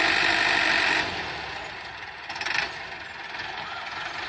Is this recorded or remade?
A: recorded